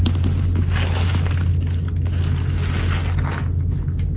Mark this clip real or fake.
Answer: real